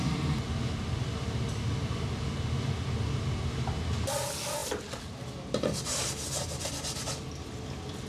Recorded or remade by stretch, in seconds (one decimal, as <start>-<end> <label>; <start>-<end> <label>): 0.0-8.1 recorded